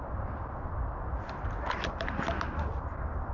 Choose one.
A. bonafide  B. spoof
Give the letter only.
A